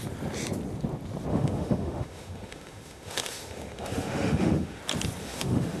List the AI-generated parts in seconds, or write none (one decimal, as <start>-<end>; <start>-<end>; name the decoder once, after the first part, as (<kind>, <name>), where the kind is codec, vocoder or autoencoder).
1.3-4.8 (autoencoder, DAC-VAE); 5.2-5.8